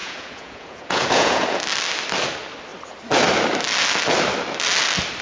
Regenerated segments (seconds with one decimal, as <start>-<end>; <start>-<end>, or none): 0.0-1.6